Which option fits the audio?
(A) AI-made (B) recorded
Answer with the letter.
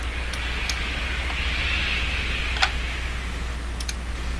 B